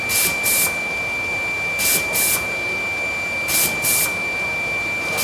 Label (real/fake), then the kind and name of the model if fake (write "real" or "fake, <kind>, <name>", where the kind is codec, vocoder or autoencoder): real